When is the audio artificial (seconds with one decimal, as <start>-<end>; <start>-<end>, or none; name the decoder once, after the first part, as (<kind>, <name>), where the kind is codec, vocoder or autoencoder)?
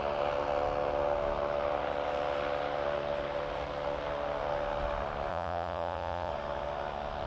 5.3-6.3 (vocoder, Vocos)